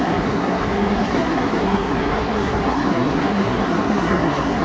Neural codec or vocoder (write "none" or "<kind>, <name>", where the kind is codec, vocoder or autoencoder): codec, SNAC